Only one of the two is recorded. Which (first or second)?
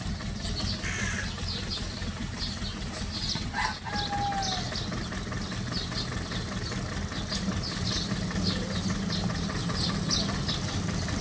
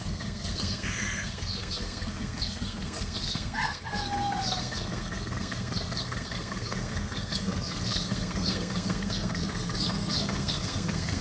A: first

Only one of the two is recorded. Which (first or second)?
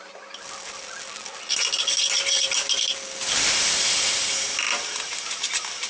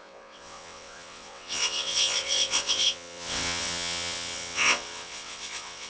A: first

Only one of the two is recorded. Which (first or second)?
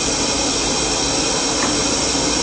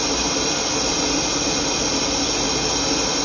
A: second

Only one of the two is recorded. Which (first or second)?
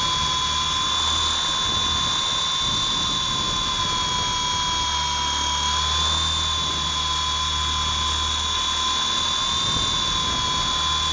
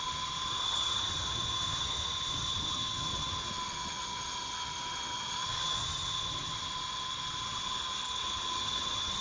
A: first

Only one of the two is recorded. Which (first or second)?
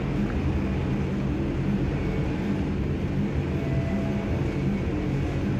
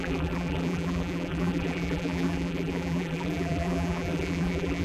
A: first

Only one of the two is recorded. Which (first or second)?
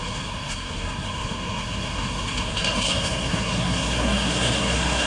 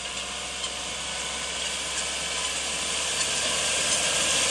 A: second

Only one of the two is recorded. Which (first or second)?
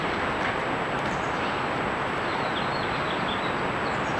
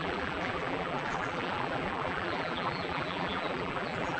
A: first